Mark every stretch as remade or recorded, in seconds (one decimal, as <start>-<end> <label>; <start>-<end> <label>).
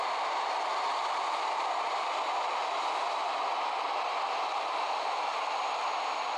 0.0-6.4 recorded